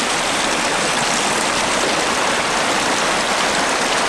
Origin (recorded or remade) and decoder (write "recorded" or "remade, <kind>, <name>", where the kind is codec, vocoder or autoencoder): recorded